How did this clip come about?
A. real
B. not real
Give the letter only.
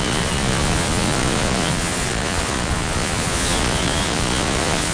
B